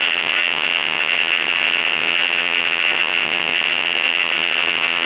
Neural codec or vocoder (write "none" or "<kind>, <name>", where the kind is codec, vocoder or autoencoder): vocoder, HiFi-GAN